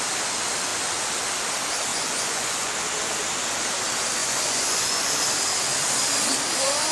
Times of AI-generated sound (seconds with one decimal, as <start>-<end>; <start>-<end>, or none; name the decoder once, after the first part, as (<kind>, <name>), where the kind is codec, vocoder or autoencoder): 1.9-2.7 (vocoder, Vocos); 4.2-5.1